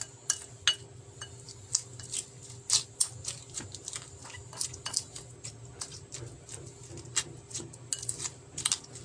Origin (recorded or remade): recorded